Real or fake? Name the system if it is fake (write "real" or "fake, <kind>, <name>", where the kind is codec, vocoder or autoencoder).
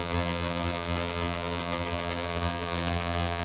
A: fake, vocoder, BigVGAN v2